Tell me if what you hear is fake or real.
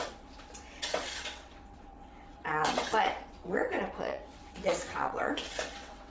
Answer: fake